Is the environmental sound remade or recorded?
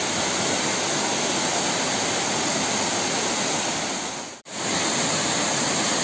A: recorded